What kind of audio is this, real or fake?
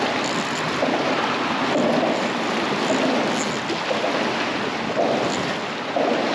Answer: real